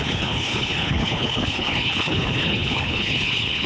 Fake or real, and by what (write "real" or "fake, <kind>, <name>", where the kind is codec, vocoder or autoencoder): fake, codec, HILCodec